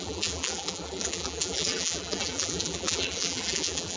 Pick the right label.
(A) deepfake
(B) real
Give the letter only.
A